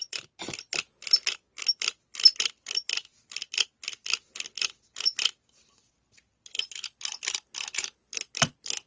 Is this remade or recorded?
recorded